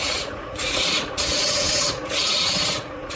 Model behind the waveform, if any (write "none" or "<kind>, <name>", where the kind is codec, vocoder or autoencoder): vocoder, Vocos